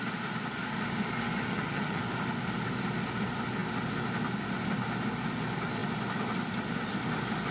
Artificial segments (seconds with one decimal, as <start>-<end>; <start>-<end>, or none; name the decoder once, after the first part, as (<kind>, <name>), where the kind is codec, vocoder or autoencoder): 1.5-2.0 (vocoder, HiFi-GAN)